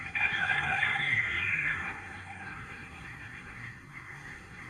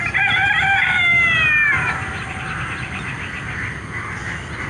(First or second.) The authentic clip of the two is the second